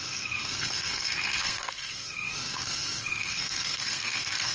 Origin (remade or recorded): remade